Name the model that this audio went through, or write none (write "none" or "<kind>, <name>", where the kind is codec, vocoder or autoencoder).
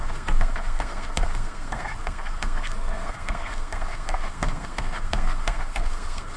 codec, SNAC